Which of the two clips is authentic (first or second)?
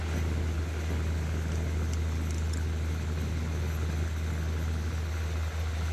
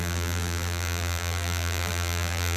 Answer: first